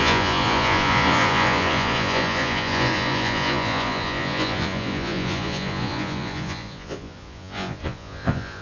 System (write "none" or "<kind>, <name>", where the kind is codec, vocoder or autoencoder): vocoder, Vocos